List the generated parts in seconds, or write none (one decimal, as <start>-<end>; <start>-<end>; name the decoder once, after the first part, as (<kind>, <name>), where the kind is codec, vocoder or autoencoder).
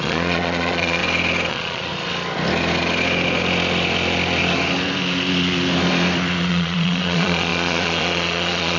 0.0-1.0 (vocoder, Vocos); 1.5-1.9; 6.5-8.8